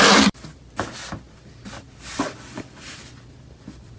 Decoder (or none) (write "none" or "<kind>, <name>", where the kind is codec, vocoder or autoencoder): vocoder, BigVGAN v2